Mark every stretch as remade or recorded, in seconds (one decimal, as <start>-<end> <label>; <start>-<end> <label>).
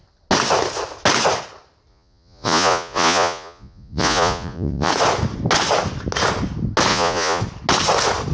0.0-1.9 recorded; 1.9-4.9 remade; 4.9-6.9 recorded; 6.9-7.4 remade; 7.4-8.3 recorded